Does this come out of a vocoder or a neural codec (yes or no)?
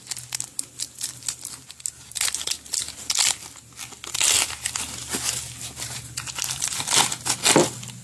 no